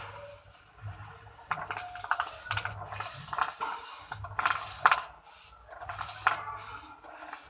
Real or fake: real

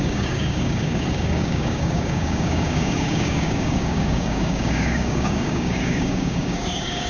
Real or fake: fake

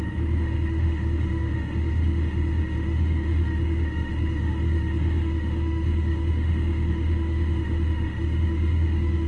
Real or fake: fake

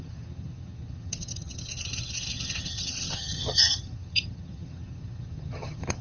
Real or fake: fake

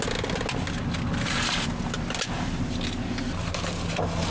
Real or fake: real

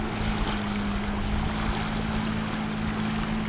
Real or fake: real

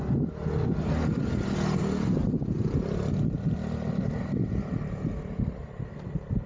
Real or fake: real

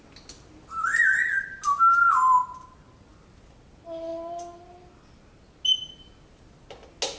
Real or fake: real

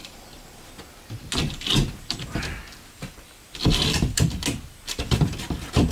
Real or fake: real